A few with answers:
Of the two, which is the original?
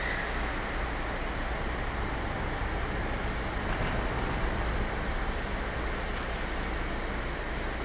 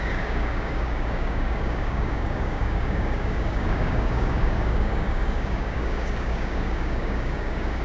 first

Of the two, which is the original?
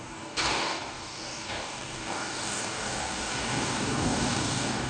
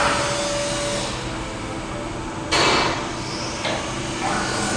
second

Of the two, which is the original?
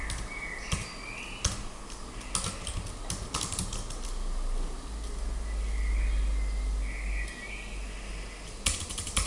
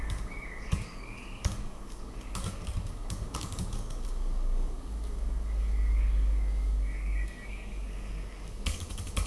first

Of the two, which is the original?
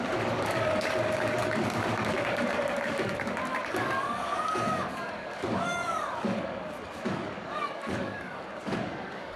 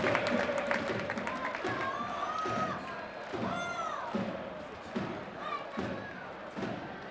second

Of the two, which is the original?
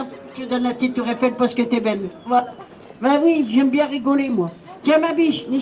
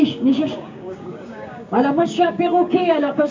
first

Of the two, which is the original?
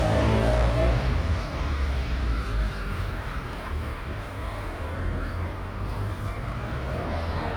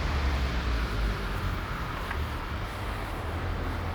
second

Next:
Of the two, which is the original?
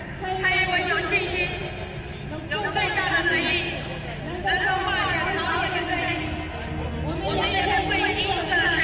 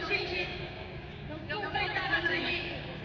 first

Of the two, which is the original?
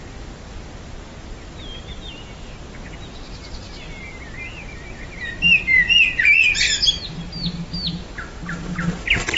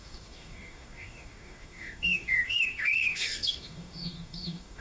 first